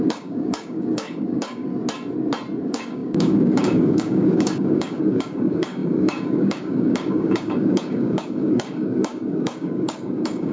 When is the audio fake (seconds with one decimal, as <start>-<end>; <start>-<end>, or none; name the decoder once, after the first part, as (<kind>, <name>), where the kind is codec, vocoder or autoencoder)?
0.0-1.7 (codec, DAC); 2.6-10.5